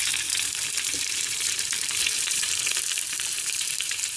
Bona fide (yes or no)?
no